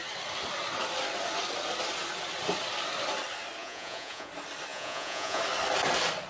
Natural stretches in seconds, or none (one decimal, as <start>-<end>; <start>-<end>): 0.0-3.6; 4.3-4.7; 5.4-6.3